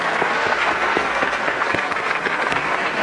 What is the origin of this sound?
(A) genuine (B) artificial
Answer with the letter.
B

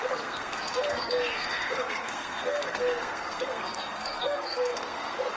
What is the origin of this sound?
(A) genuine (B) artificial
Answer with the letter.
B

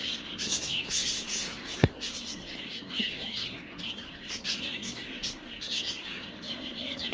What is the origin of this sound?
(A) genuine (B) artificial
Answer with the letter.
B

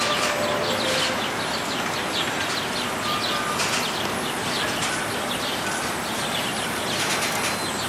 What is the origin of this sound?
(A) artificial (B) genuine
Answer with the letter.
B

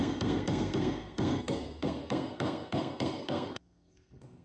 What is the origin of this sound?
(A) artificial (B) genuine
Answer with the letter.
A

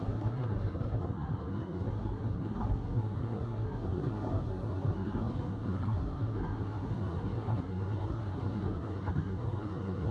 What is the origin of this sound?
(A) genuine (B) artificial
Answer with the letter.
B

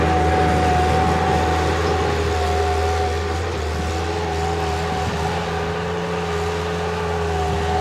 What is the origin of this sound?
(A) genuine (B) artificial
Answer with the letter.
A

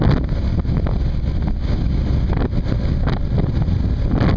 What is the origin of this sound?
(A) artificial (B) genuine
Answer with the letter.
B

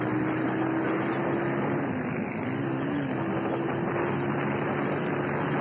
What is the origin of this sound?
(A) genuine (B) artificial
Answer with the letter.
A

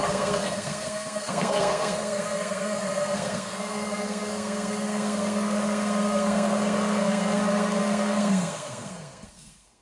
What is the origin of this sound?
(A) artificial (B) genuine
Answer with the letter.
A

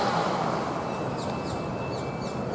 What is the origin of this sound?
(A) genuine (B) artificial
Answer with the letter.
A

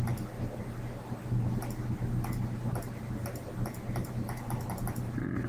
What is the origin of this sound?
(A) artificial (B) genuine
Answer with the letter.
B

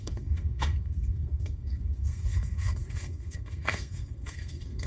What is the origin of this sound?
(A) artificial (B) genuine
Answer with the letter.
A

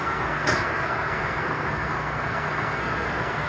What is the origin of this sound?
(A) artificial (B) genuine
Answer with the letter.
A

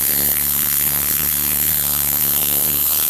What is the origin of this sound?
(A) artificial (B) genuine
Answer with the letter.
A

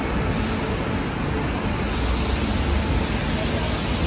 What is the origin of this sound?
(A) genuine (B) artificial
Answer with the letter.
A